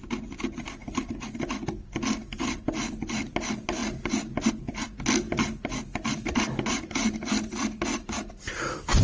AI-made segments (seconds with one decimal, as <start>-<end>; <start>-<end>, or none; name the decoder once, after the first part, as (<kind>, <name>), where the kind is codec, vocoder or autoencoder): 0.8-2.6 (vocoder, BigVGAN v2)